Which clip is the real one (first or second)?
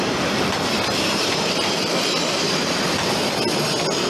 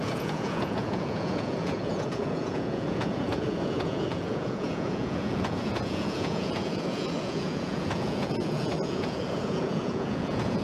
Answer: first